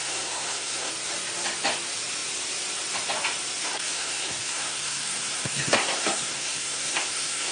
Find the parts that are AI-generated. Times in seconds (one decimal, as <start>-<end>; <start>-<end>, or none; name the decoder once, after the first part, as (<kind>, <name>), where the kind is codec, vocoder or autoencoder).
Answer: 0.0-0.9 (codec, SNAC); 3.6-7.5